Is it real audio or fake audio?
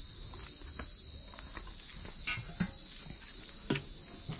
real